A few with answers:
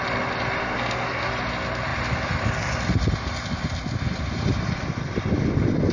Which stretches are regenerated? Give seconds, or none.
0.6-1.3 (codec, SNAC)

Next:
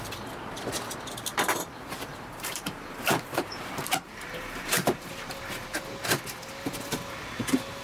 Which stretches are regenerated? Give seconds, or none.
2.1-5.4 (vocoder, BigVGAN v2)

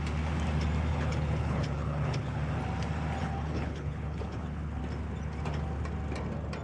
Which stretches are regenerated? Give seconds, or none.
0.9-2.4 (codec, HILCodec); 3.2-4.8

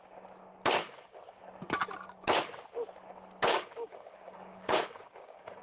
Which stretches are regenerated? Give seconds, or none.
0.8-1.4 (codec, DAC); 3.5-5.6

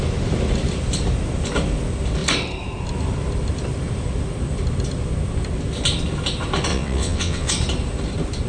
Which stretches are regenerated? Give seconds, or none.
6.7-7.5 (vocoder, WaveNeXt)

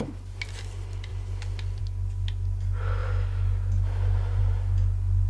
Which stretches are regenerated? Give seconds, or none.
none

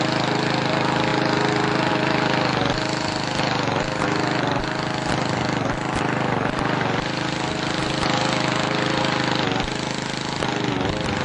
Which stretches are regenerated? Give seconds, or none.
none

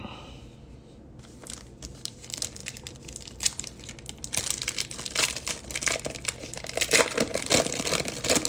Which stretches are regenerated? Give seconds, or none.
none